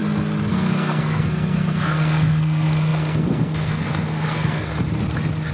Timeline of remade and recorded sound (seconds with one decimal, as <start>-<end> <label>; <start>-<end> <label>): 0.0-0.5 recorded; 0.5-4.7 remade; 4.7-5.5 recorded

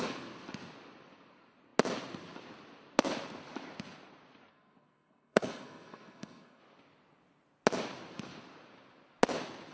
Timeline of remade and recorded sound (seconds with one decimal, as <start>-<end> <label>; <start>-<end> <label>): 0.0-4.5 recorded; 4.5-6.6 remade; 6.6-9.7 recorded

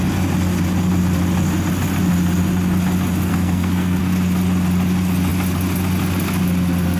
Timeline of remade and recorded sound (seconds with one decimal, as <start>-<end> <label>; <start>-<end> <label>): 0.0-3.3 recorded; 3.3-4.0 remade; 4.0-7.0 recorded